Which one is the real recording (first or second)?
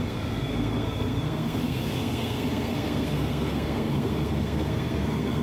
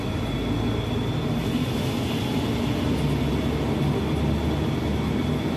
second